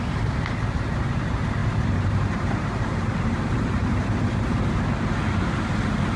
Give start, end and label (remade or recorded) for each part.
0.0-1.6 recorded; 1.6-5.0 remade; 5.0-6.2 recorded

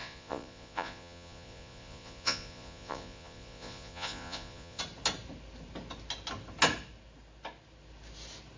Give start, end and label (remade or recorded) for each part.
0.0-4.8 remade; 4.8-8.6 recorded

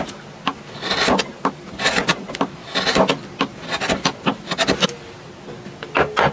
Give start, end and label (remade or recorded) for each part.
0.0-6.3 recorded

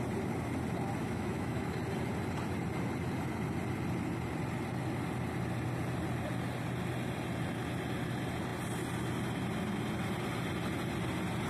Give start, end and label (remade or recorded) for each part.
0.0-1.0 recorded; 1.0-1.8 remade; 1.8-11.5 recorded

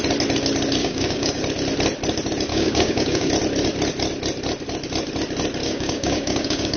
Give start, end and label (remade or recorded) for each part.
0.0-0.8 recorded; 0.8-1.4 remade; 1.4-2.5 recorded; 2.5-3.3 remade; 3.3-5.6 recorded; 5.6-6.8 remade